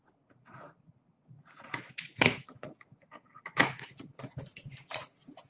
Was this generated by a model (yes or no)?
yes